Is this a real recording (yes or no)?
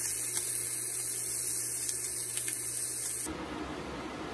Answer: yes